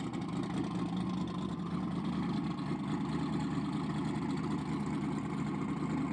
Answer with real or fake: real